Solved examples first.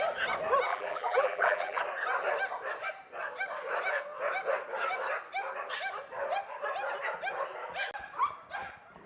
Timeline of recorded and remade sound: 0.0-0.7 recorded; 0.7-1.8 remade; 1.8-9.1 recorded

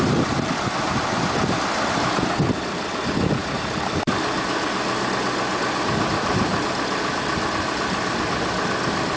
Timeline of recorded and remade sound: 0.0-9.2 recorded

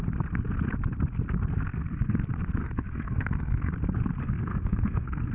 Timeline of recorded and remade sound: 0.0-1.7 recorded; 1.7-2.2 remade; 2.2-2.6 recorded; 2.6-3.7 remade; 3.7-4.2 recorded; 4.2-5.3 remade

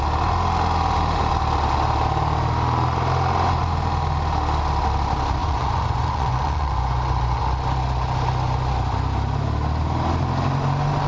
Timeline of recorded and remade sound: 0.0-5.4 recorded; 5.4-7.4 remade; 7.4-11.1 recorded

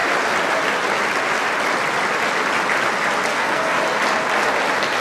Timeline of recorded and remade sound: 0.0-3.3 recorded; 3.3-3.8 remade; 3.8-5.0 recorded